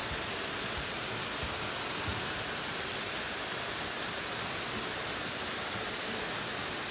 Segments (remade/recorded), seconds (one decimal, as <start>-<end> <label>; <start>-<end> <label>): 0.0-2.1 recorded; 2.1-6.2 remade; 6.2-6.9 recorded

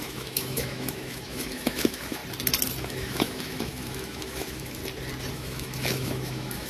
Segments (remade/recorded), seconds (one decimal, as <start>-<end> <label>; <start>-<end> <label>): 0.0-2.2 remade; 2.2-2.8 recorded; 2.8-4.8 remade; 4.8-5.3 recorded; 5.3-6.7 remade

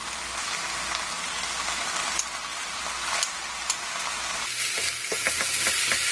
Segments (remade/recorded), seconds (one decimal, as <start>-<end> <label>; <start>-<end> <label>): 0.0-0.6 remade; 0.6-2.5 recorded; 2.5-4.4 remade; 4.4-6.1 recorded

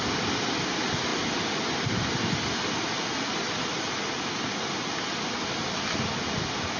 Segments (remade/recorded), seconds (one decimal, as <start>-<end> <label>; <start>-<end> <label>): 0.0-6.8 recorded

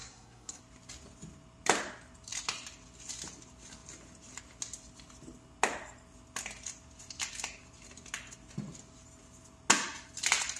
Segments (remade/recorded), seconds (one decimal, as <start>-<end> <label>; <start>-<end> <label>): 0.0-0.6 remade; 0.6-10.6 recorded

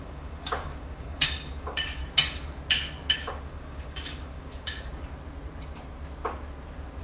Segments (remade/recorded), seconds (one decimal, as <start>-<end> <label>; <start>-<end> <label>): 0.0-2.0 remade; 2.0-3.1 recorded; 3.1-4.9 remade; 4.9-7.0 recorded

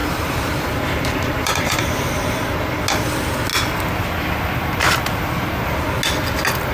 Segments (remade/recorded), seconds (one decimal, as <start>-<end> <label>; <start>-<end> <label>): 0.0-2.1 remade; 2.1-6.7 recorded

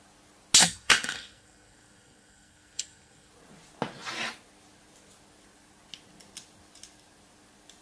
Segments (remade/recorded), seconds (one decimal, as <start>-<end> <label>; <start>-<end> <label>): 0.0-0.6 recorded; 0.6-3.3 remade; 3.3-7.8 recorded